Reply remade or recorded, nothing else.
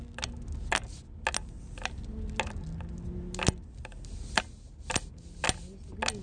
recorded